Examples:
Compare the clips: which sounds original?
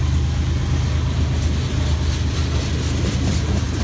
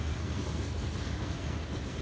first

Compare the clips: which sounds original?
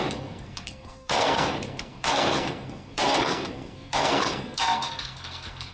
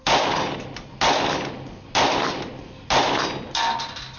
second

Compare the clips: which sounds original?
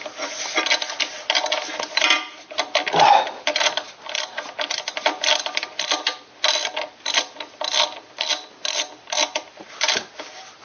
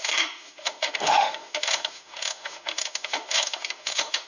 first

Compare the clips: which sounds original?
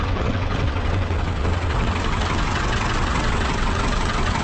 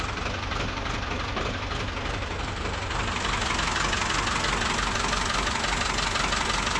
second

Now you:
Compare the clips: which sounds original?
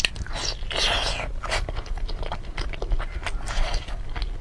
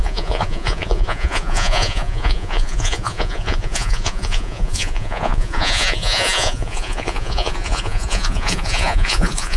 first